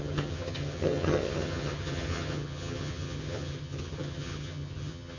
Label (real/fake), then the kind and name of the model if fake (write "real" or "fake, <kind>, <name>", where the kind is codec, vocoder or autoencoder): fake, vocoder, HiFi-GAN